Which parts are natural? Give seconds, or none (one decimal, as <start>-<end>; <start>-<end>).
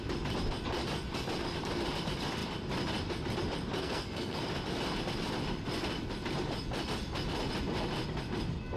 0.0-3.8; 4.4-8.8